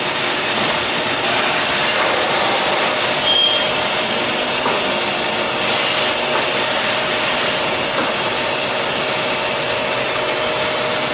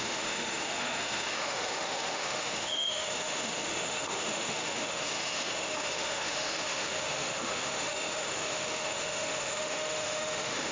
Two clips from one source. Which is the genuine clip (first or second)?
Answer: first